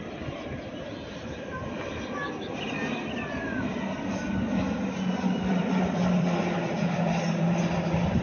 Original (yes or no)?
no